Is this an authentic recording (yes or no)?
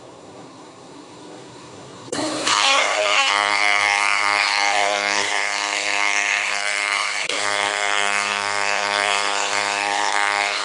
no